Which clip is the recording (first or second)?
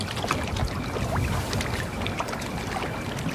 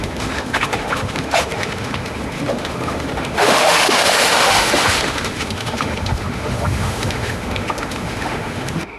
first